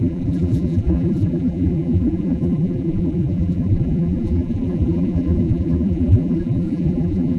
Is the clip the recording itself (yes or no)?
no